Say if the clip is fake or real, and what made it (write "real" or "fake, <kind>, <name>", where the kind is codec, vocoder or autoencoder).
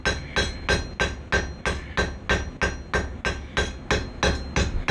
real